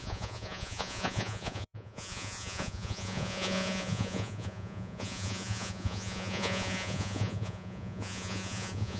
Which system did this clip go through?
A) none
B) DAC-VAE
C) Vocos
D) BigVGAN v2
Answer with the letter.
C